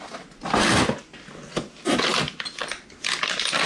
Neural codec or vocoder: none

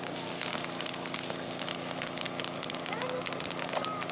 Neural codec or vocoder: none